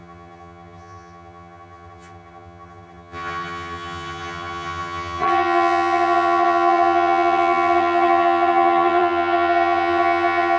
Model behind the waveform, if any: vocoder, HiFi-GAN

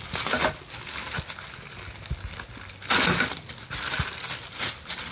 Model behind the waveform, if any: none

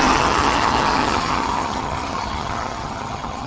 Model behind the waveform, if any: vocoder, HiFi-GAN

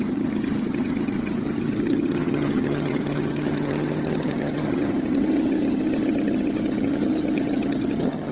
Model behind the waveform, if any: vocoder, HiFi-GAN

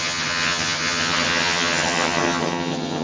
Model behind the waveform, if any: vocoder, HiFi-GAN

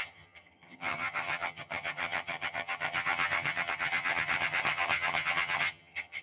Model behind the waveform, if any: vocoder, HiFi-GAN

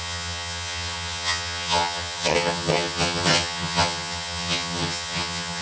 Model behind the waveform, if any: vocoder, HiFi-GAN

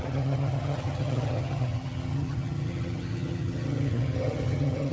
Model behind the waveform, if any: vocoder, HiFi-GAN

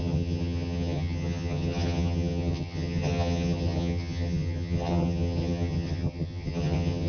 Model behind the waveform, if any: vocoder, HiFi-GAN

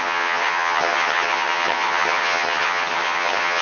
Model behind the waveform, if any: vocoder, HiFi-GAN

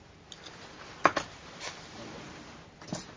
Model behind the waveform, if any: none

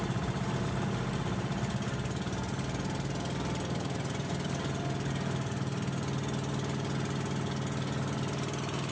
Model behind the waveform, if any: none